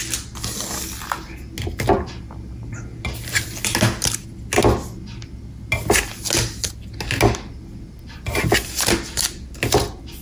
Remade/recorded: recorded